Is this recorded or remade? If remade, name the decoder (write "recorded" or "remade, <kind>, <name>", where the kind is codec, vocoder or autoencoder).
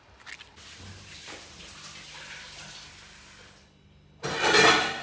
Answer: recorded